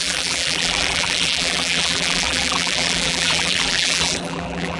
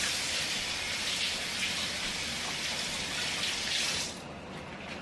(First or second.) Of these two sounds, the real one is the second